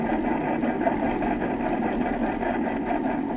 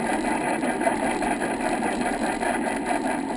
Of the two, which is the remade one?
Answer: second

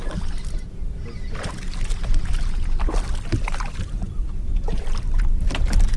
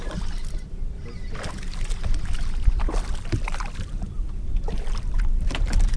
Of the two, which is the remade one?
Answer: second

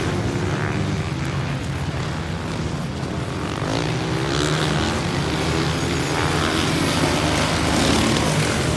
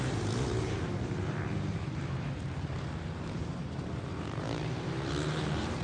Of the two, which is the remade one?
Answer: second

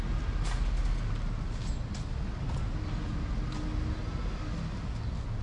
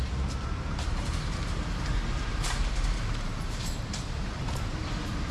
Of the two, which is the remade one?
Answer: second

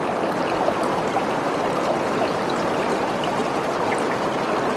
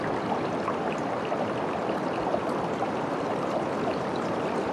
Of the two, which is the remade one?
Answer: second